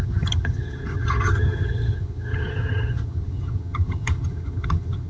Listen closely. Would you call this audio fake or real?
fake